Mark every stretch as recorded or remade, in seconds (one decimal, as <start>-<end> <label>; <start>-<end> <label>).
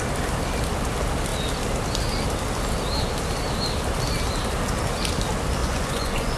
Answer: 0.0-5.6 recorded; 5.6-6.4 remade